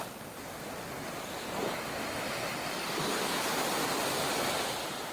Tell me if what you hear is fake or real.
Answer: real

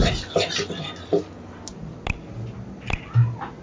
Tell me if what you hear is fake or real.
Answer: real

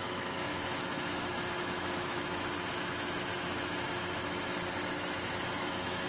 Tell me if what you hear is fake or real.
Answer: fake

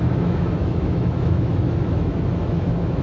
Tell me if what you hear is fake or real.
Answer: fake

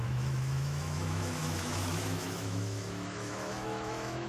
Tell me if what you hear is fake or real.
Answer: fake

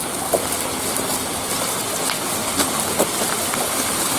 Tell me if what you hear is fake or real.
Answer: real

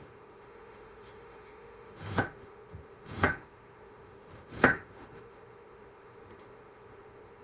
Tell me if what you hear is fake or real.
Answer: fake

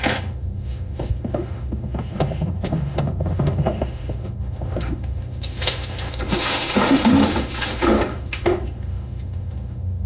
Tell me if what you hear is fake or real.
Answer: fake